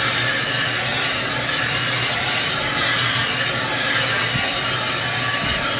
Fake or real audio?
real